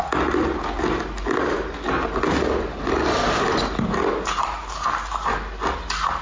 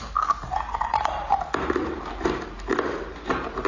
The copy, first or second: second